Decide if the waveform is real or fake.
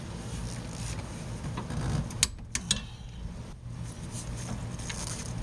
real